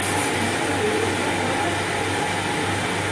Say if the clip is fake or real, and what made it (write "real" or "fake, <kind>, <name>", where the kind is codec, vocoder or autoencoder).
real